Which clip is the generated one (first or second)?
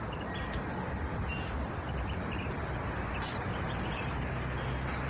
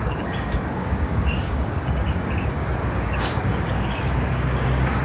second